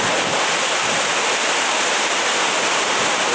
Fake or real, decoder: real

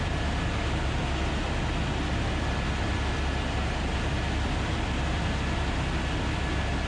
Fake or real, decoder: real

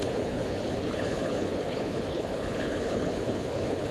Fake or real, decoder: fake, codec, HILCodec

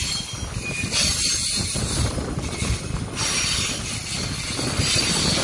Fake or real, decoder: real